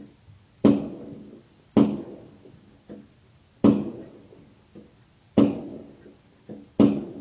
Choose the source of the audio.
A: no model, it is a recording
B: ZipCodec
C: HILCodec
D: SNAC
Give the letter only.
A